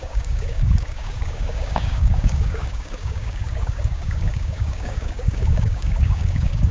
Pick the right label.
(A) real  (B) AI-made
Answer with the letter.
B